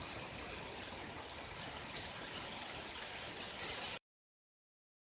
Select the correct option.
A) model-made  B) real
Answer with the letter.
B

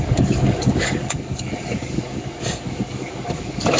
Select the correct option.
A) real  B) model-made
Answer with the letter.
B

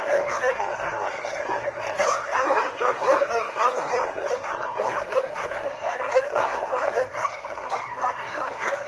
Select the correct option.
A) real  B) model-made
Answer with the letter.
B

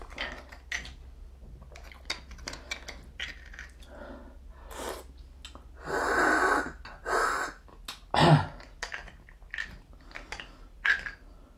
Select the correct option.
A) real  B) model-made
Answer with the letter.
A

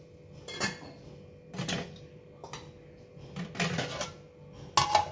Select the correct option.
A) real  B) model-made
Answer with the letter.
A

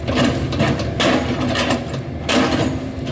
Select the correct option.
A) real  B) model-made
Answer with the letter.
A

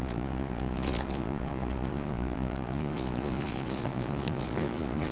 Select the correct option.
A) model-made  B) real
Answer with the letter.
A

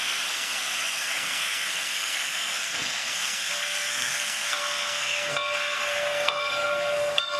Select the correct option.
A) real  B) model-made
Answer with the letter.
B